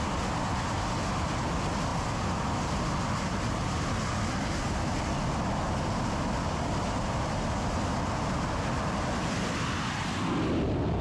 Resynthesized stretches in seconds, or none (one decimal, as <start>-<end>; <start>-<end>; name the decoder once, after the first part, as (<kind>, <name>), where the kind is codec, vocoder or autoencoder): none